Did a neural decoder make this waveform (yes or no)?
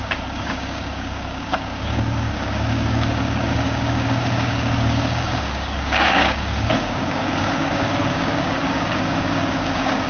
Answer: yes